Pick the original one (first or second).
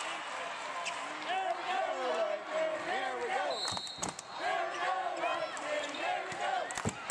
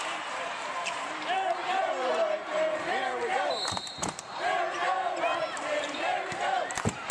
first